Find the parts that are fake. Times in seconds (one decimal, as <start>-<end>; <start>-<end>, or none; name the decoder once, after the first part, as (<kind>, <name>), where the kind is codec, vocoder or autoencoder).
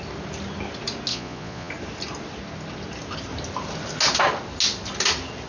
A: 1.1-1.7 (vocoder, Vocos)